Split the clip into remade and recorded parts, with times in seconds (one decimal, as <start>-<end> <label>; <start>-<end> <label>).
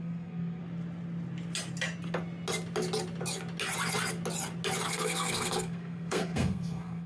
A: 0.0-0.6 remade; 0.6-4.9 recorded; 4.9-7.1 remade